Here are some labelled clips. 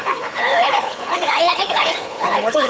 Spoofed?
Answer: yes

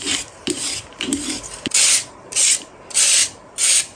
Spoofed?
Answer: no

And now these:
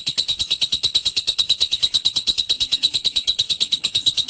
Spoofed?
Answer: yes